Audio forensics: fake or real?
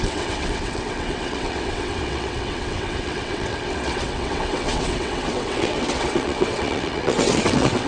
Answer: fake